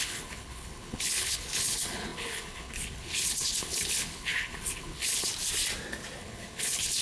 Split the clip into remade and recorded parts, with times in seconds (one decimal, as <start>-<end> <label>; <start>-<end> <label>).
0.0-5.3 remade; 5.3-6.2 recorded; 6.2-7.0 remade